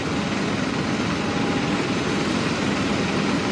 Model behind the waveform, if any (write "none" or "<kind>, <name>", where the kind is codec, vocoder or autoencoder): none